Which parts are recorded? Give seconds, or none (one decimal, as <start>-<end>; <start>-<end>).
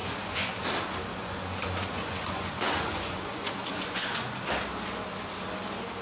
0.5-1.1; 4.4-6.0